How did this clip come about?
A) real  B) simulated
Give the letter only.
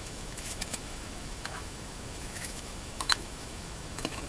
B